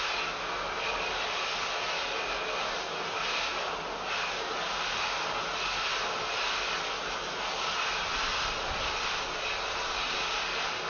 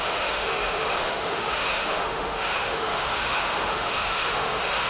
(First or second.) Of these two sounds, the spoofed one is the second